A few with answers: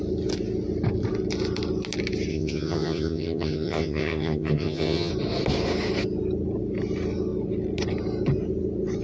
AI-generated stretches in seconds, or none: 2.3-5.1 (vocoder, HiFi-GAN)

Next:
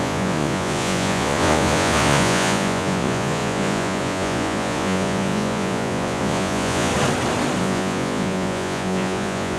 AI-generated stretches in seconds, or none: 0.0-6.9 (vocoder, Vocos); 7.6-9.6

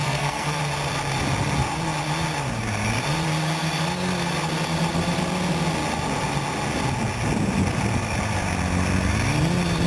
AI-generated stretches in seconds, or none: 0.0-0.6 (codec, SNAC)

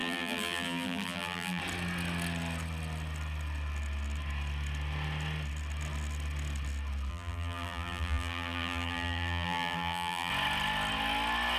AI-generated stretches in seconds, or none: 0.0-1.6 (vocoder, BigVGAN v2); 7.1-10.3

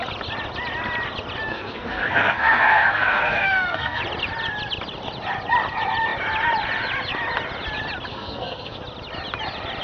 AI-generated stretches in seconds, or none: 1.5-4.0 (codec, SNAC); 8.1-8.8